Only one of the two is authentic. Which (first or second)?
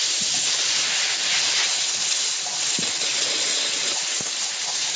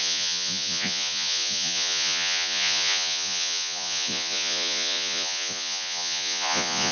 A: first